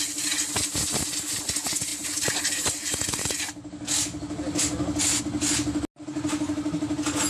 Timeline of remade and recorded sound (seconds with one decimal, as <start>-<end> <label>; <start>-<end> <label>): 0.0-7.3 recorded

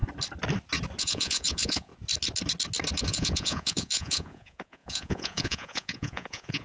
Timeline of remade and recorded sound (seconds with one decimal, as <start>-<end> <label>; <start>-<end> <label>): 0.0-1.0 recorded; 1.0-1.9 remade; 1.9-3.1 recorded; 3.1-6.6 remade

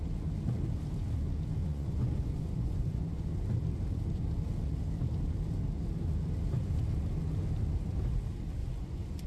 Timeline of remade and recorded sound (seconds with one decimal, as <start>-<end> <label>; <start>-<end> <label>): 0.0-1.6 recorded; 1.6-3.3 remade; 3.3-8.6 recorded; 8.6-9.3 remade

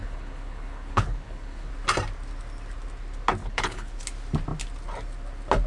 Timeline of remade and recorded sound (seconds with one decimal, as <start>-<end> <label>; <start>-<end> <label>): 0.0-1.7 remade; 1.7-3.4 recorded; 3.4-4.0 remade; 4.0-5.7 recorded

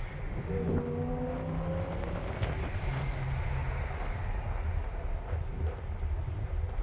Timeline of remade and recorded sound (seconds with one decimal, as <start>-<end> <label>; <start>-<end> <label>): 0.0-6.8 recorded